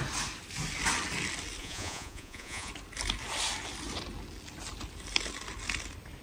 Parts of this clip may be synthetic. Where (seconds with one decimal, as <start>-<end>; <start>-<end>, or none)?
1.6-2.7